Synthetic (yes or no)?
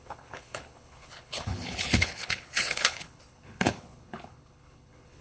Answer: yes